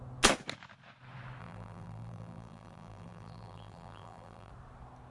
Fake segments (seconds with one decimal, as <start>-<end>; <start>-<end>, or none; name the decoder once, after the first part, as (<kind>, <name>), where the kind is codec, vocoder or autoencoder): 1.4-4.5 (vocoder, BigVGAN v2)